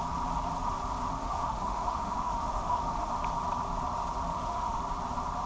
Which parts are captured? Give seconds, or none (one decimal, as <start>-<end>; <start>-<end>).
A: 0.0-1.2; 3.1-4.3; 4.8-5.5